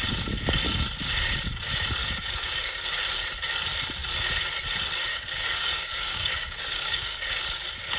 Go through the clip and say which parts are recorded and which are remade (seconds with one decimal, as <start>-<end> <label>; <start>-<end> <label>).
0.0-2.0 recorded; 2.0-3.0 remade; 3.0-5.1 recorded; 5.1-7.4 remade; 7.4-8.0 recorded